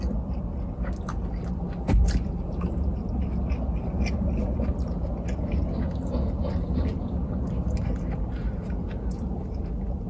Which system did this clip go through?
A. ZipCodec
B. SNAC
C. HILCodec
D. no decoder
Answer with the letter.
D